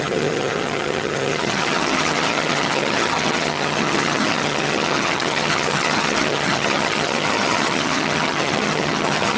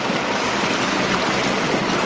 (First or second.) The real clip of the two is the second